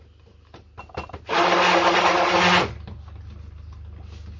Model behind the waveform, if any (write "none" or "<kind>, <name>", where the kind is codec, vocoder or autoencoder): none